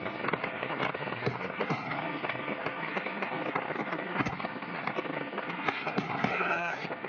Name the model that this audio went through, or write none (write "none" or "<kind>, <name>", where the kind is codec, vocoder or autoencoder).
codec, SNAC